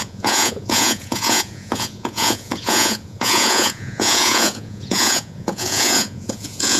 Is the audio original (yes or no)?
no